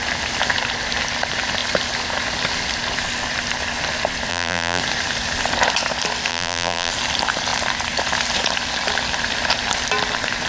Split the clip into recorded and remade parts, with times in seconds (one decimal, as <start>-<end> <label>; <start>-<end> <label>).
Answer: 0.0-4.3 recorded; 4.3-4.8 remade; 4.8-6.3 recorded; 6.3-6.9 remade; 6.9-10.5 recorded